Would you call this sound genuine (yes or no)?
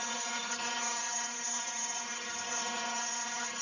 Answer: no